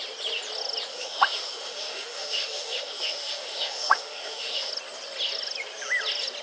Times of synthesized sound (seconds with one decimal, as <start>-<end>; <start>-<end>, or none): 0.9-4.7